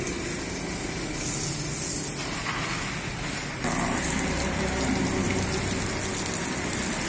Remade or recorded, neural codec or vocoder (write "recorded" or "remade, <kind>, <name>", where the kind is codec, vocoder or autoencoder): recorded